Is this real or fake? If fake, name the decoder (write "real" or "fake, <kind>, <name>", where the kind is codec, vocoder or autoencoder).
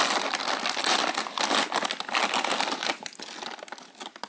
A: real